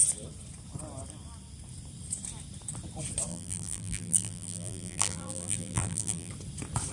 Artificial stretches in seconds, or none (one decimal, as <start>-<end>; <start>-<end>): 3.3-6.3